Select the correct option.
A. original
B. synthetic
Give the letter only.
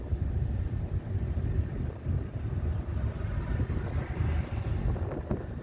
A